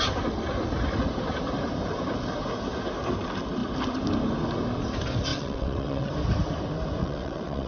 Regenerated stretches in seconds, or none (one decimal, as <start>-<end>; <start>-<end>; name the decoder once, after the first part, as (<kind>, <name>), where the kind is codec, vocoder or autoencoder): 5.3-6.1 (vocoder, WaveNeXt); 7.0-7.7